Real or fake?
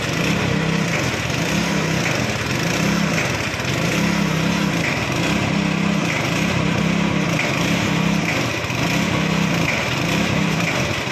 real